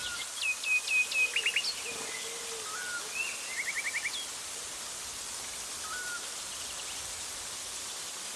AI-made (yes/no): no